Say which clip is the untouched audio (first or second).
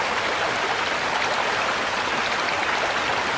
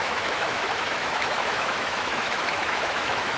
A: first